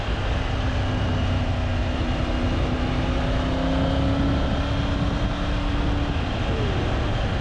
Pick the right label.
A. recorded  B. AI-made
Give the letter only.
A